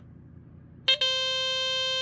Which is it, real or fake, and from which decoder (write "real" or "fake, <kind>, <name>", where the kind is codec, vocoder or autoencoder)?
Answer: real